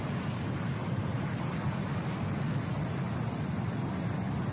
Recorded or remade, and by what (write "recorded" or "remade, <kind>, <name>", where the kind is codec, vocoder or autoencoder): recorded